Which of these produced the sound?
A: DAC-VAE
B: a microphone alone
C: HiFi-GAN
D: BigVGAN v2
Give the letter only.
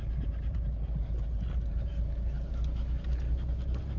B